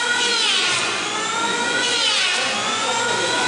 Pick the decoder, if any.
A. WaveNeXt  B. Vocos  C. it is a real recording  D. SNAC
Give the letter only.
B